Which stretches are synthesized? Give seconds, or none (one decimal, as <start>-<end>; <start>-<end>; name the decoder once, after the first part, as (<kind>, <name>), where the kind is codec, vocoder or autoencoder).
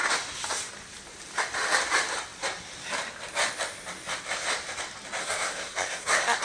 5.2-6.4 (codec, SNAC)